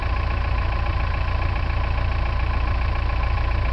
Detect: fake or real real